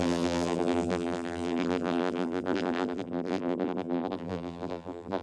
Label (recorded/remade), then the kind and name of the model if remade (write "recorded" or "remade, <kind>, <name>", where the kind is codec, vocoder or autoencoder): remade, vocoder, BigVGAN v2